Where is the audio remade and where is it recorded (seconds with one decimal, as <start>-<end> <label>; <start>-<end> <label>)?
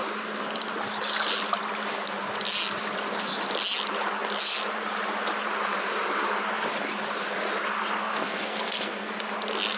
0.0-8.0 recorded; 8.0-9.1 remade; 9.1-9.8 recorded